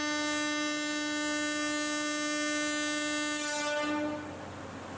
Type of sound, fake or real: real